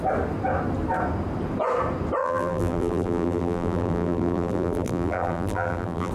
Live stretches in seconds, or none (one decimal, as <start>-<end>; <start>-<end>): 0.0-2.2